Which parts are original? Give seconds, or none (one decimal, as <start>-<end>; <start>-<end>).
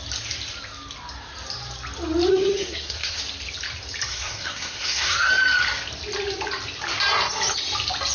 0.0-2.3; 3.2-4.1; 5.3-8.1